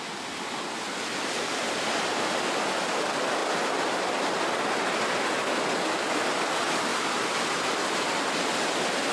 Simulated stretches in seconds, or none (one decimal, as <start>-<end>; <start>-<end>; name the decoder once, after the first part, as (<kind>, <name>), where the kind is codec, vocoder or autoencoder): none